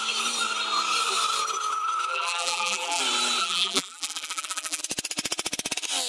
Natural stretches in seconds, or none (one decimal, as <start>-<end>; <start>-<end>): 0.0-2.1; 3.0-3.4; 4.8-6.1